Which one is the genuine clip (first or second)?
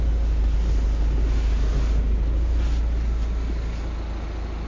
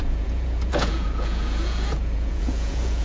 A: first